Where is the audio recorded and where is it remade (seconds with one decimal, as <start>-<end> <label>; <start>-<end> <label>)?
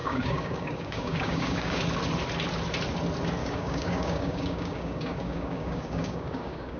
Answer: 0.0-1.8 remade; 1.8-3.4 recorded; 3.4-6.8 remade